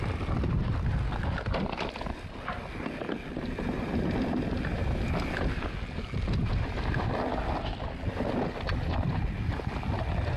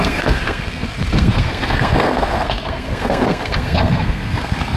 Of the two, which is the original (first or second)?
first